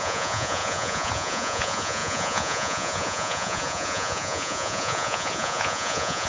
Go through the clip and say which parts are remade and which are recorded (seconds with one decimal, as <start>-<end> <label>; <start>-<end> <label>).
0.0-6.3 remade